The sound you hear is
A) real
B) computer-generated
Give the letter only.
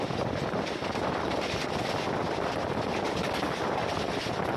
A